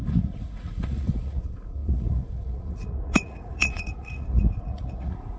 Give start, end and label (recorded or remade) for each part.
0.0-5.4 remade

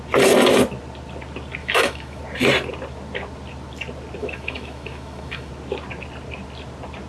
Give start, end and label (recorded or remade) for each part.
0.0-1.6 recorded; 1.6-2.2 remade; 2.2-4.2 recorded; 4.2-5.5 remade; 5.5-7.1 recorded

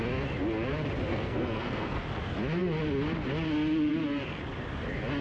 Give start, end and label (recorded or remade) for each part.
0.0-1.1 recorded; 1.1-2.0 remade; 2.0-5.2 recorded